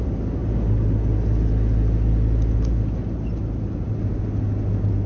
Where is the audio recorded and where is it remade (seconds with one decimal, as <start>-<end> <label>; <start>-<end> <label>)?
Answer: 0.0-5.1 recorded